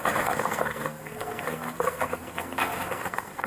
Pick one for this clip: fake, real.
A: fake